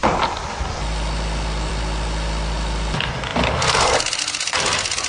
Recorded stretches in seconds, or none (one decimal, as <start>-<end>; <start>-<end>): 0.0-3.3; 4.2-5.1